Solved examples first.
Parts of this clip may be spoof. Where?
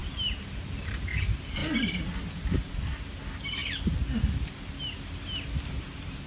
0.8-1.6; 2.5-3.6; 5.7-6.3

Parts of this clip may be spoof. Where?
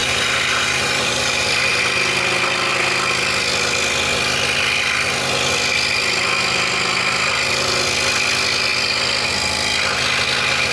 0.0-1.8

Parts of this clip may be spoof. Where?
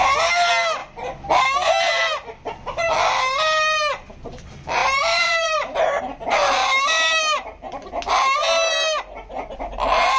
4.8-6.0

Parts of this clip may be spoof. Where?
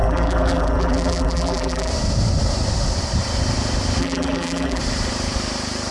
0.0-1.9; 4.0-4.8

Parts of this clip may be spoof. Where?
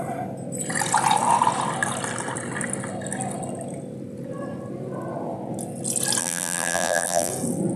6.2-7.3